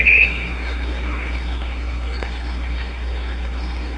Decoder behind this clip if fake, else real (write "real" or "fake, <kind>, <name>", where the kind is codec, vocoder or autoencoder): fake, codec, SNAC